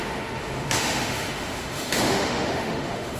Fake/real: fake